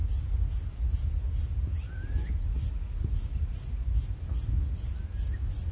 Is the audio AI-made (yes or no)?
no